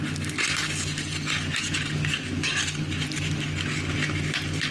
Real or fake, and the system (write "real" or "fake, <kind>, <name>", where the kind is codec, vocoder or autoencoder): real